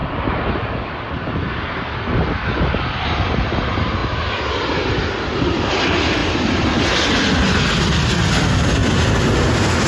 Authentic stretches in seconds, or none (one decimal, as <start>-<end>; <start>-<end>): 1.5-6.2; 7.1-9.9

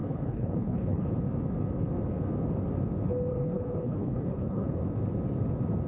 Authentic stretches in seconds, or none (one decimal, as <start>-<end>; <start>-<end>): 1.1-3.3; 4.8-5.9